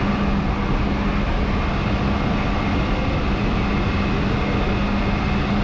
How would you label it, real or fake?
real